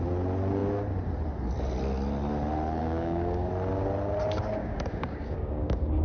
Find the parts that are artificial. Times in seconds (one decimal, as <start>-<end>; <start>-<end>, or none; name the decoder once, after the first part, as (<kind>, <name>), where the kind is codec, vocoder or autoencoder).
2.8-3.5 (codec, DAC); 4.6-6.0